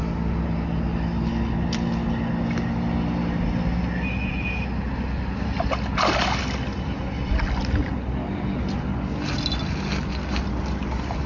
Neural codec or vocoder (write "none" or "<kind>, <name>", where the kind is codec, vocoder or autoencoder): none